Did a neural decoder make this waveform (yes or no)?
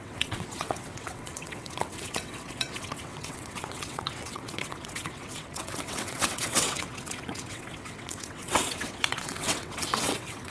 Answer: yes